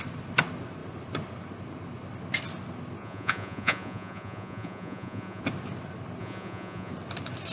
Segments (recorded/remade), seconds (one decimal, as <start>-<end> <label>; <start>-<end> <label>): 0.0-3.0 recorded; 3.0-5.4 remade; 5.4-6.2 recorded; 6.2-6.9 remade; 6.9-7.5 recorded